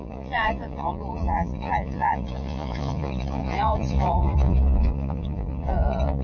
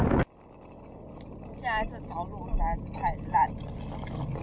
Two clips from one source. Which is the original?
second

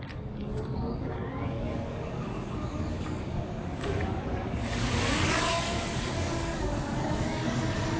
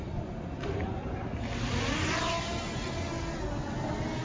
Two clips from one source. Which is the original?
second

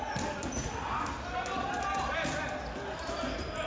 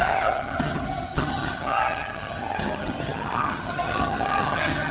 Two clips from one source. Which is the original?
first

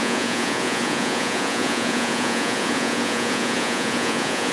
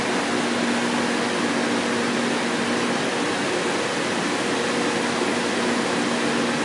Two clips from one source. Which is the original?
second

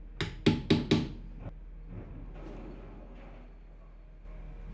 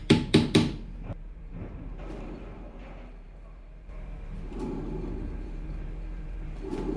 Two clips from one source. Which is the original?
first